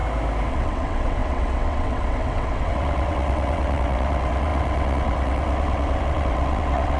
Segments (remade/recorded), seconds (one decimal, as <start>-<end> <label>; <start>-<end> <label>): 0.0-0.5 recorded; 0.5-7.0 remade